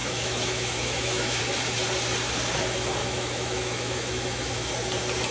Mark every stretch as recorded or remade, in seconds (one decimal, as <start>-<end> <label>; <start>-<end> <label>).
0.0-1.4 remade; 1.4-3.0 recorded; 3.0-4.7 remade; 4.7-5.3 recorded